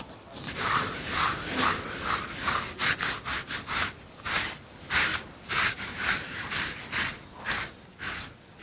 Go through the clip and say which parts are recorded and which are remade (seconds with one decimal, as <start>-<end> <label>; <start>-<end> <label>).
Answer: 0.0-5.1 recorded; 5.1-6.8 remade; 6.8-8.6 recorded